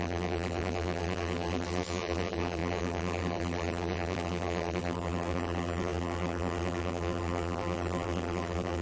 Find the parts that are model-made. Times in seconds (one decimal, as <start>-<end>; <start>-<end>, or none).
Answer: 0.0-8.8